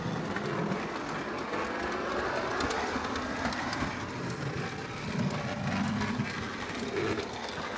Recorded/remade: recorded